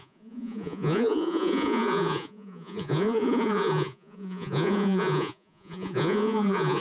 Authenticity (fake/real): fake